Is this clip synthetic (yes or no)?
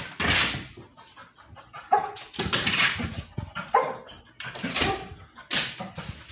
no